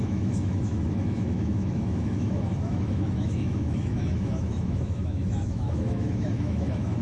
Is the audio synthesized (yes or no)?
yes